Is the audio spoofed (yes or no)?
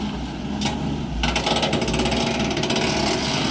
no